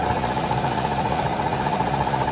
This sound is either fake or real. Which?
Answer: fake